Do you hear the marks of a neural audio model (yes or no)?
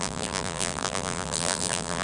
yes